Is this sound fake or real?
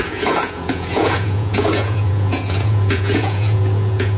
fake